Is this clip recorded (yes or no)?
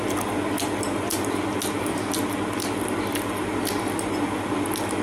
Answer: yes